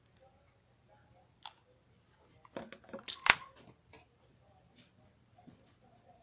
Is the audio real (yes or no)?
yes